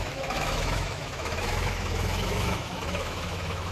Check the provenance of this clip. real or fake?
fake